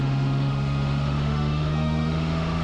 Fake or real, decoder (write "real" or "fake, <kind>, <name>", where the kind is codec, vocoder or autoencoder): fake, autoencoder, DAC-VAE